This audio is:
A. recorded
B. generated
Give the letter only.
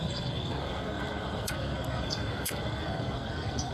B